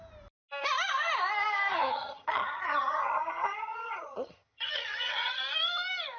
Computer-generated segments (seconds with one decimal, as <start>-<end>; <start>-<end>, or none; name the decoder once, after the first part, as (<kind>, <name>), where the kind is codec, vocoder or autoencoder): 1.7-5.4 (vocoder, HiFi-GAN)